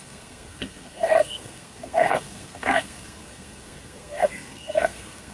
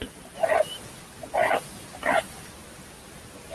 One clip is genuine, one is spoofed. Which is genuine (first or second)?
second